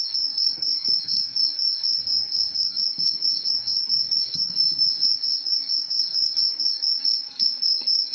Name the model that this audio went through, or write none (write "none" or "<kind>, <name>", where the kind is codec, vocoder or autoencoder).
codec, SNAC